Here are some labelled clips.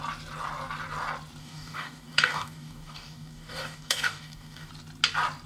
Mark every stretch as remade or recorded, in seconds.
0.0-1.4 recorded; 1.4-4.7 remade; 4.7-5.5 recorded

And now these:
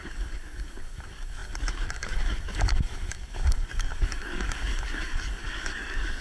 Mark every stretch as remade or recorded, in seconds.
0.0-6.2 remade

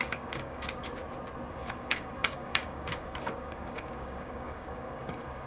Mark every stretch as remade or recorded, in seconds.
0.0-1.0 remade; 1.0-1.5 recorded; 1.5-5.5 remade

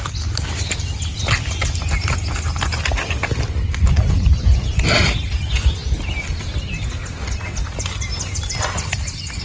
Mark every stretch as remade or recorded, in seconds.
0.0-9.4 recorded

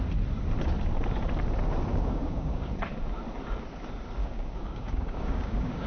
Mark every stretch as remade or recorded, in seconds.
0.0-1.9 recorded; 1.9-2.7 remade; 2.7-4.2 recorded; 4.2-5.9 remade

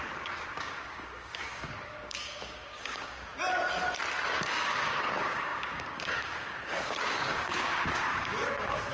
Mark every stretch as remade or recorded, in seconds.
0.0-3.3 remade; 3.3-4.4 recorded; 4.4-8.9 remade

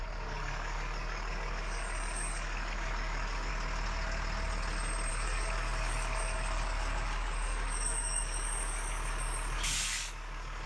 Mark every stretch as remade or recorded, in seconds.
0.0-3.5 remade; 3.5-5.1 recorded; 5.1-10.7 remade